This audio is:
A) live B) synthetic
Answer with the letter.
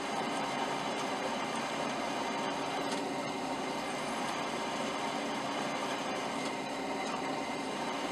B